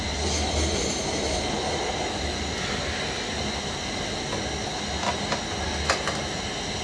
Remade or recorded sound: recorded